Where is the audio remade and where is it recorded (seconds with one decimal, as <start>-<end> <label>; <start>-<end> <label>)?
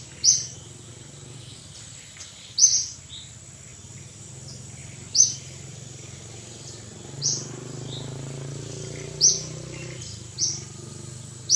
0.0-11.6 recorded